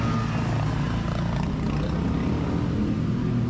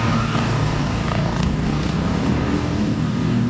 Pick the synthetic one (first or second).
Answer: second